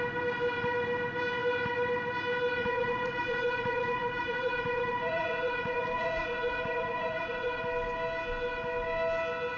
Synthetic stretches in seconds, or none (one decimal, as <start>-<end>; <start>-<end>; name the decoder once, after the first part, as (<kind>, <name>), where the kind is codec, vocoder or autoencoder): 2.6-7.6 (vocoder, Vocos)

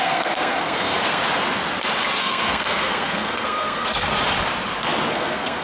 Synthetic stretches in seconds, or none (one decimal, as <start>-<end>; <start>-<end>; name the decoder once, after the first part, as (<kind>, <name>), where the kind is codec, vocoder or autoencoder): 0.0-1.2 (codec, SNAC); 2.2-4.1; 5.1-5.6

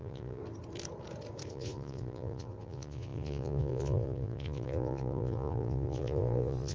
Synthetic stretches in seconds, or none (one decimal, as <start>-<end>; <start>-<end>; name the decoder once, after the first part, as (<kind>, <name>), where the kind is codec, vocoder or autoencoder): 0.0-0.4 (vocoder, Vocos); 1.5-6.7